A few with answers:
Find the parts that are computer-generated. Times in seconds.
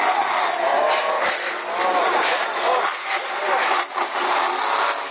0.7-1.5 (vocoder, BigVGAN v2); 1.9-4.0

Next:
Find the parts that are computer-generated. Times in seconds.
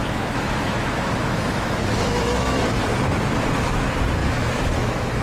0.0-2.8 (autoencoder, DAC-VAE); 4.2-5.2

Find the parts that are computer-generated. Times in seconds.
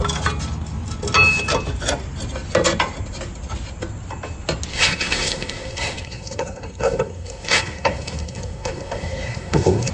4.7-9.9 (codec, SNAC)